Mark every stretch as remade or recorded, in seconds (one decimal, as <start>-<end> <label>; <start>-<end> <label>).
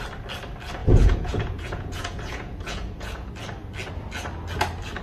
0.0-0.8 recorded; 0.8-3.3 remade; 3.3-5.0 recorded